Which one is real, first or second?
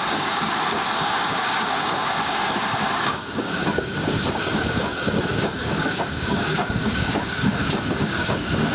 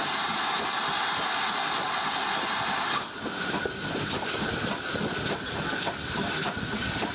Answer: second